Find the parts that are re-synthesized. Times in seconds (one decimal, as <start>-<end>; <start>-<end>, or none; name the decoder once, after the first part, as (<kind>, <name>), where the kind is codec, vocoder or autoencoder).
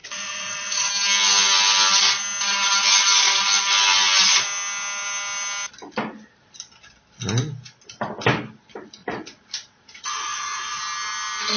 0.0-0.9 (vocoder, Vocos); 9.0-10.8